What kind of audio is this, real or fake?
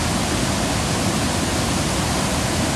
real